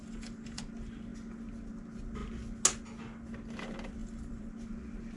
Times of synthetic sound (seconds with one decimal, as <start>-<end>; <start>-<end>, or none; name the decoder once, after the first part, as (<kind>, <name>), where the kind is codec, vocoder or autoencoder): 0.0-0.6 (vocoder, BigVGAN v2); 4.0-4.5